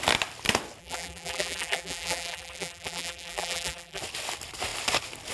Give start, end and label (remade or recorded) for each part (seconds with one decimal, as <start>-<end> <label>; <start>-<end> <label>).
0.0-0.8 recorded; 0.8-4.0 remade; 4.0-5.3 recorded